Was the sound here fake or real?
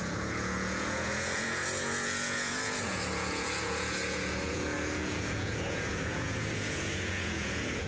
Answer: fake